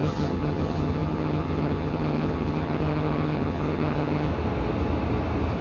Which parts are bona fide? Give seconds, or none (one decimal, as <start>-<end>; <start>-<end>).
4.3-5.6